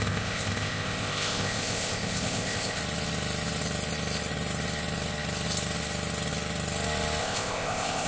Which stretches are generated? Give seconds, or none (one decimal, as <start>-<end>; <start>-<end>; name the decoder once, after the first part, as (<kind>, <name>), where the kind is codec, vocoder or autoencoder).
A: 0.0-2.8 (codec, ZipCodec); 7.2-8.1